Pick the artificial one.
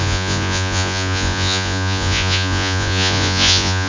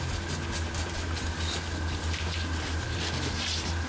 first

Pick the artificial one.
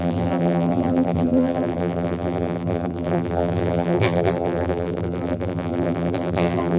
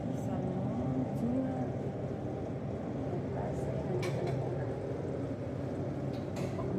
first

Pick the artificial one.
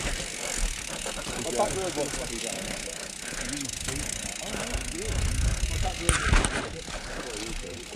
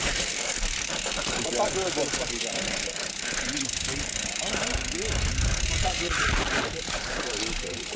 second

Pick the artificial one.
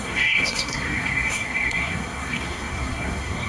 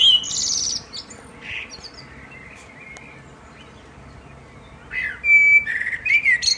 first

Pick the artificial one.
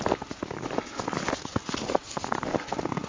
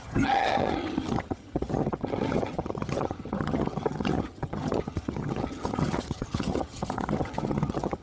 second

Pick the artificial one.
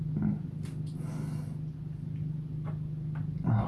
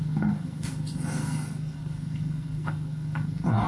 second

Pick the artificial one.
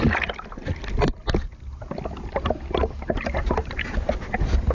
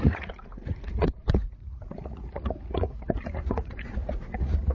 second